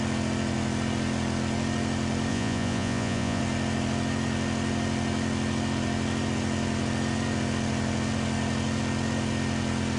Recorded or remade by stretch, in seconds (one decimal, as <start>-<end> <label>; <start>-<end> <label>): 0.0-2.3 recorded; 2.3-3.4 remade; 3.4-10.0 recorded